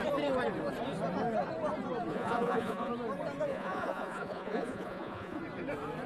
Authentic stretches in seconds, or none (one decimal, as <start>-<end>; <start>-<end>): 0.0-2.1; 2.9-3.5; 5.4-6.1